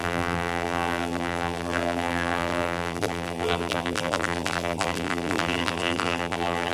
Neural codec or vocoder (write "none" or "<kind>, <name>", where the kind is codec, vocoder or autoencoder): vocoder, BigVGAN v2